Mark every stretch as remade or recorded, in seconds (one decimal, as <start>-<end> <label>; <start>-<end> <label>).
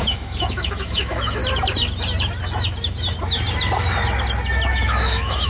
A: 0.0-1.4 remade; 1.4-4.7 recorded; 4.7-5.5 remade